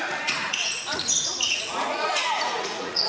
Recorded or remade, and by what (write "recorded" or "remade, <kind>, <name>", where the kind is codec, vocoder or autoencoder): remade, vocoder, Vocos